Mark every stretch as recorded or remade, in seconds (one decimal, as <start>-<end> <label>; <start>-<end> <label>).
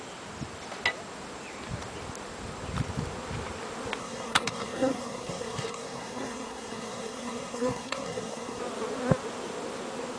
0.0-4.0 recorded; 4.0-8.6 remade; 8.6-10.2 recorded